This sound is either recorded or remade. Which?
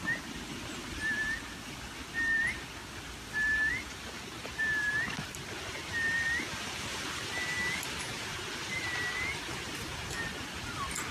recorded